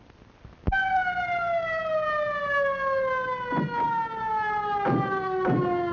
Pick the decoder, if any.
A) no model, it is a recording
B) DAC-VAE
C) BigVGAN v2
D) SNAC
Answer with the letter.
A